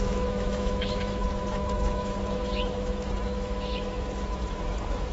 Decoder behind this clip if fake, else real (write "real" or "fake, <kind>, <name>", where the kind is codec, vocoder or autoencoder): fake, autoencoder, DAC-VAE